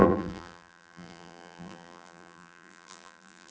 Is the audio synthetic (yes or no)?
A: yes